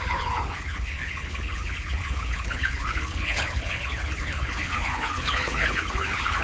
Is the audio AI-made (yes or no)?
yes